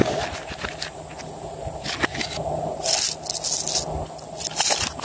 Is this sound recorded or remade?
recorded